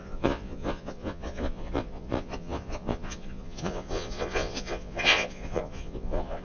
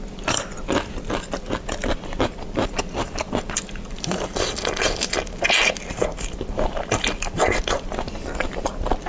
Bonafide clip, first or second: second